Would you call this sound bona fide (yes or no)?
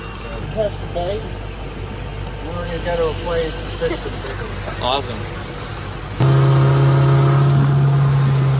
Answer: yes